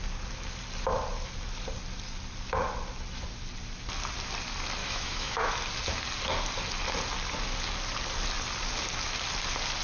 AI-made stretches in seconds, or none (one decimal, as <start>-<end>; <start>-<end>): 4.8-5.5